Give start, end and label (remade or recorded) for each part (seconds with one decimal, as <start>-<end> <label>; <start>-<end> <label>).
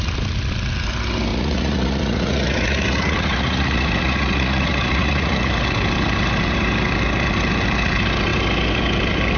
0.0-1.3 recorded; 1.3-5.5 remade; 5.5-9.4 recorded